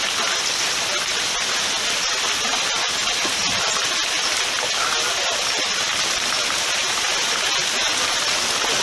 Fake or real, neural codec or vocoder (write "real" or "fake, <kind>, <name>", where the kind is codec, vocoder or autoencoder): real